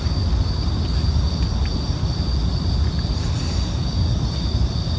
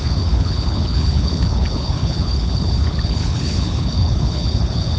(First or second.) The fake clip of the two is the second